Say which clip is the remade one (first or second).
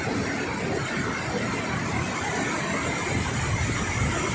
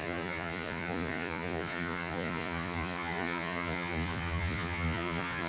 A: second